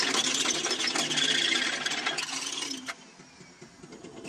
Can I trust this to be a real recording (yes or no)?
yes